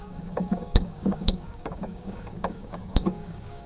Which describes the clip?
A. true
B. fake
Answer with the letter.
B